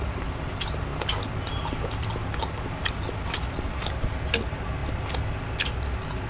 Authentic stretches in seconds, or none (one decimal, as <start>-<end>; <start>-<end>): 0.0-6.3